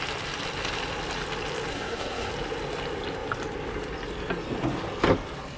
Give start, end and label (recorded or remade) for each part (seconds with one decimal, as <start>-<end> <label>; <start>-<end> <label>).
0.0-1.7 recorded; 1.7-2.3 remade; 2.3-5.6 recorded